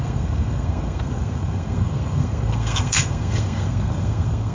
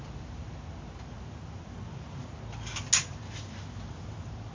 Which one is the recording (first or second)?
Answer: second